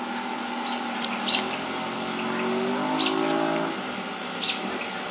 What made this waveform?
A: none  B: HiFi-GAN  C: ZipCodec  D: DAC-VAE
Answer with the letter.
A